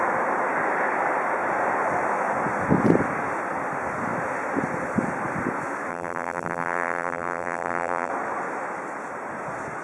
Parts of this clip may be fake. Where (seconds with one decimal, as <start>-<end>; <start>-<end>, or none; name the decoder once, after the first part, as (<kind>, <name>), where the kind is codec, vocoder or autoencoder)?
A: 5.9-8.1 (vocoder, BigVGAN v2)